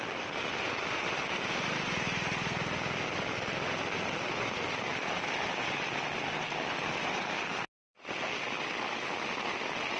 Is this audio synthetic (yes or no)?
no